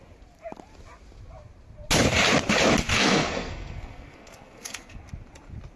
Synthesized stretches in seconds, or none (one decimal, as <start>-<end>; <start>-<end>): 2.9-5.0